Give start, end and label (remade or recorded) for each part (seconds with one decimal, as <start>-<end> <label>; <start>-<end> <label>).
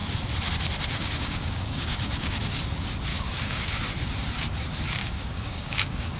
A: 0.0-0.9 recorded; 0.9-2.6 remade; 2.6-3.1 recorded; 3.1-3.8 remade; 3.8-5.0 recorded; 5.0-6.2 remade